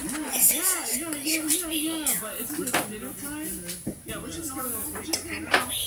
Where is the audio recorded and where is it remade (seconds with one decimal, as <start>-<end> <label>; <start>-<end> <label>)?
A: 0.0-5.9 recorded